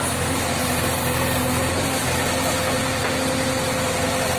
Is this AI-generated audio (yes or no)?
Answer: no